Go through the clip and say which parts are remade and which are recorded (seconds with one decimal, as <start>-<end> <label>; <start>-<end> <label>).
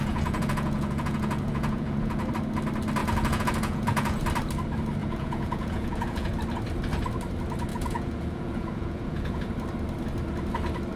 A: 0.0-2.3 remade; 2.3-3.0 recorded; 3.0-4.2 remade; 4.2-5.0 recorded; 5.0-6.3 remade; 6.3-7.7 recorded; 7.7-9.4 remade; 9.4-11.0 recorded